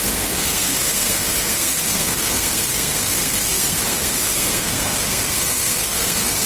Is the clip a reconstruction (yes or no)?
yes